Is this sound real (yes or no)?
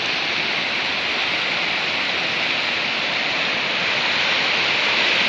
yes